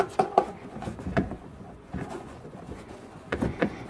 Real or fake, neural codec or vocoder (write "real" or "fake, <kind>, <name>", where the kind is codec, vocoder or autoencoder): fake, vocoder, Vocos